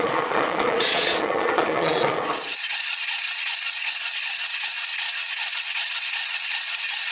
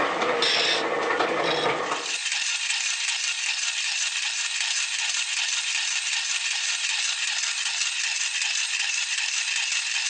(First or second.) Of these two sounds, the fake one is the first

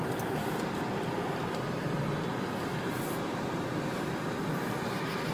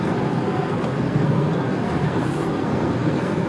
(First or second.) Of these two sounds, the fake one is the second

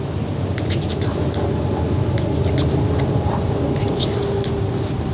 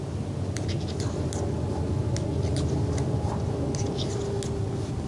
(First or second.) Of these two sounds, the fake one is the first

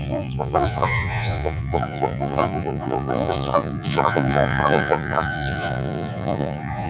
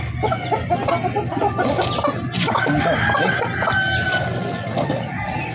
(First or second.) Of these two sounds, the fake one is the first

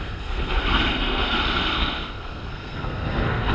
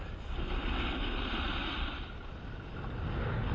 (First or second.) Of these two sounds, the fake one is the first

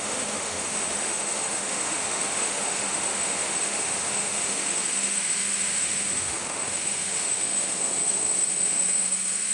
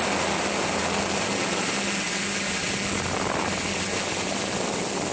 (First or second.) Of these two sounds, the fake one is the first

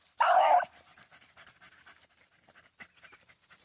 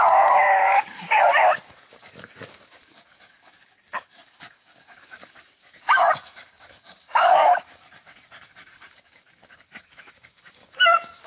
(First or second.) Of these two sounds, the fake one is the second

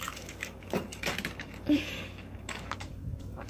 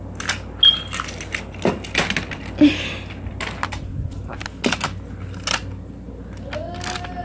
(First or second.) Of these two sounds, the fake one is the first